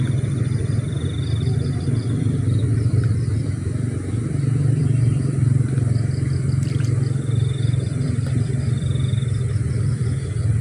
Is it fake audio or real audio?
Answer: fake